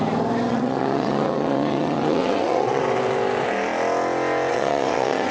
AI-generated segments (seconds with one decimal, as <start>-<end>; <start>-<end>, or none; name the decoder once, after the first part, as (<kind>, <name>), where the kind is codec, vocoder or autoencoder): 0.5-2.8 (vocoder, WaveNeXt); 4.5-5.3